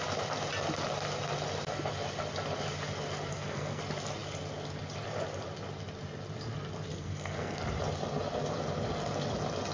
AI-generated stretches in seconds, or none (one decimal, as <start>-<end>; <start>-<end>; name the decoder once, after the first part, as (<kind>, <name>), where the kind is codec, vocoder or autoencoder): 3.3-3.8 (codec, SNAC); 6.9-7.6